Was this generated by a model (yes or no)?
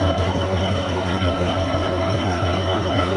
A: yes